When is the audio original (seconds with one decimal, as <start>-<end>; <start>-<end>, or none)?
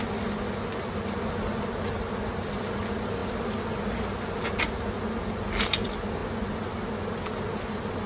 0.0-8.1